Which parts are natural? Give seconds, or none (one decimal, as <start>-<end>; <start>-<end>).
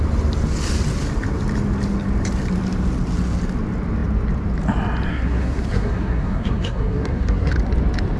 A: 0.0-5.1; 7.5-8.2